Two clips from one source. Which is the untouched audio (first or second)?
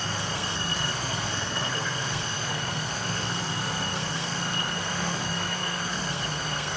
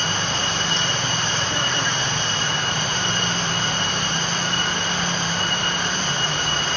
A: second